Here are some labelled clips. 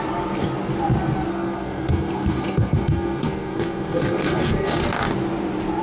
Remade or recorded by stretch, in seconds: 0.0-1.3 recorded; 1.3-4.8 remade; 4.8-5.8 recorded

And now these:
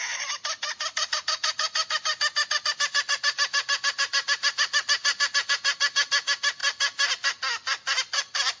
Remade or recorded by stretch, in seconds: 0.0-8.6 recorded

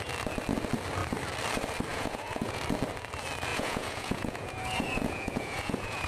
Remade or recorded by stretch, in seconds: 0.0-1.9 recorded; 1.9-2.6 remade; 2.6-3.5 recorded; 3.5-6.1 remade

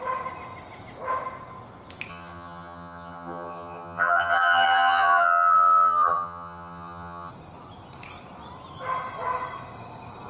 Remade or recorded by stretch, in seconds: 0.0-2.1 recorded; 2.1-7.3 remade; 7.3-10.3 recorded

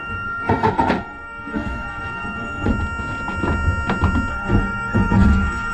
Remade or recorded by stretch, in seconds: 0.0-2.7 remade; 2.7-4.3 recorded; 4.3-5.7 remade

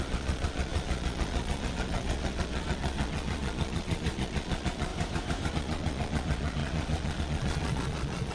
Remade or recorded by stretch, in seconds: 0.0-4.9 remade; 4.9-5.5 recorded; 5.5-8.3 remade

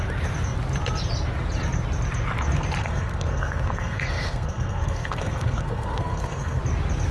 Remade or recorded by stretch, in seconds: 0.0-2.8 recorded; 2.8-6.6 remade; 6.6-7.1 recorded

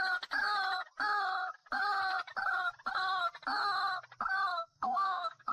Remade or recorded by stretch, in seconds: 0.0-4.5 recorded; 4.5-5.5 remade